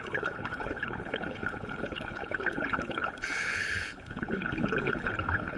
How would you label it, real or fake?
fake